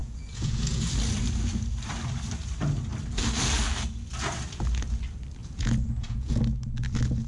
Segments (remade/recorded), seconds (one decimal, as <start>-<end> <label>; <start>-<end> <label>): 0.0-0.9 remade; 0.9-5.4 recorded; 5.4-6.4 remade; 6.4-7.3 recorded